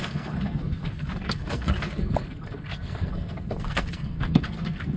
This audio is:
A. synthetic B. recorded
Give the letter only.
A